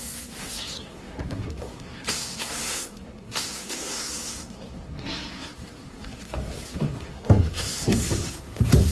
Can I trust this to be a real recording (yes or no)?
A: no